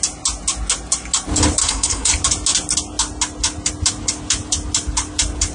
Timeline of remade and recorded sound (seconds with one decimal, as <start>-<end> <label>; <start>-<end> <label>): 0.0-1.6 recorded; 1.6-2.1 remade; 2.1-5.5 recorded